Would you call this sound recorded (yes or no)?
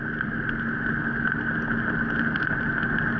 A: yes